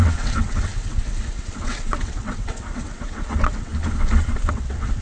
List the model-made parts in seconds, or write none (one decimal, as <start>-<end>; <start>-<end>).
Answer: 0.0-3.7; 4.5-5.0